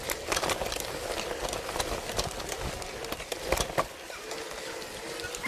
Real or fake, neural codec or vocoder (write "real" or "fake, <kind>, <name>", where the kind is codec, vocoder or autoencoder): real